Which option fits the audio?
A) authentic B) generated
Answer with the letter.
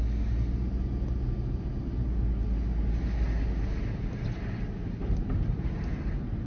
A